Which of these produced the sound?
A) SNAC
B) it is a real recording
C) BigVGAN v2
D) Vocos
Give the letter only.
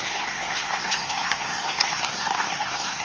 A